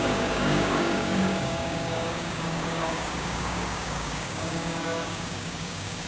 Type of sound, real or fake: fake